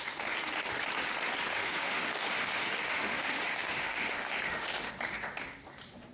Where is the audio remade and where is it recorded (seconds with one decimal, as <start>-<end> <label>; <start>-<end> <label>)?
0.0-1.5 recorded; 1.5-4.9 remade; 4.9-6.1 recorded